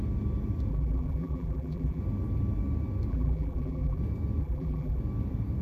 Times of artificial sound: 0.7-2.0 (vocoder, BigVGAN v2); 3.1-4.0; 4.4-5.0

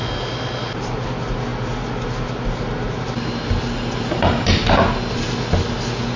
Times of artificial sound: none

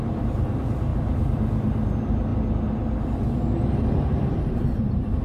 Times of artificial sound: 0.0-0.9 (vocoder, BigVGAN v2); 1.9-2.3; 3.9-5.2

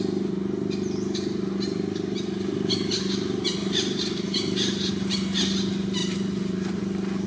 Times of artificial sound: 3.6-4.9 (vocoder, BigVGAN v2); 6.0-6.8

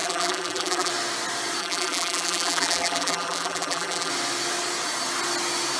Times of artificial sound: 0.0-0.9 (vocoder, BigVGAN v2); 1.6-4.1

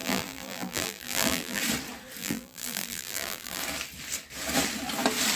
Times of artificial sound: 0.0-1.6 (vocoder, BigVGAN v2); 2.2-3.6

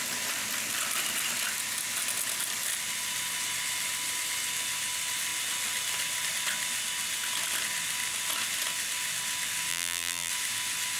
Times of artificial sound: 9.7-10.3 (vocoder, BigVGAN v2)

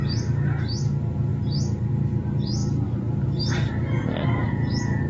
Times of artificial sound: 2.6-3.7 (vocoder, BigVGAN v2)